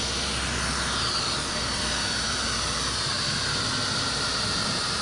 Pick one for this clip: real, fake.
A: real